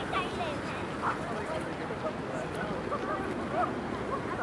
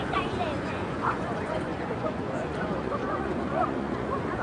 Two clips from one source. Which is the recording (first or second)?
first